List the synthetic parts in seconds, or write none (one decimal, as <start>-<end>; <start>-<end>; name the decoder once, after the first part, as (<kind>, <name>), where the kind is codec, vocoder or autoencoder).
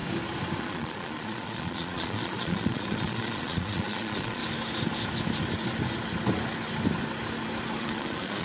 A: 0.6-4.4 (vocoder, Vocos); 7.8-8.4